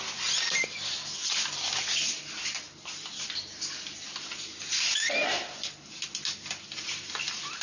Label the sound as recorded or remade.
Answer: recorded